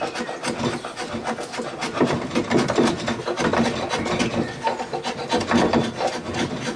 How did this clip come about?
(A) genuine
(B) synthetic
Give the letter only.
A